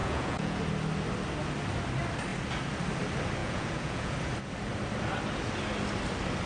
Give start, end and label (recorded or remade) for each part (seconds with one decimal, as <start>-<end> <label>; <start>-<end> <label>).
0.0-0.6 remade; 0.6-3.4 recorded; 3.4-4.1 remade; 4.1-6.5 recorded